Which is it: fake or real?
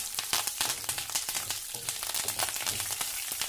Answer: fake